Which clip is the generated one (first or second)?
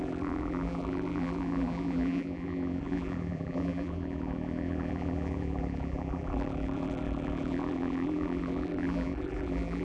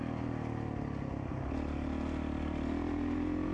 first